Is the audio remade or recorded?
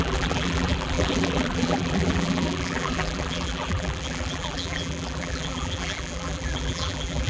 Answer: remade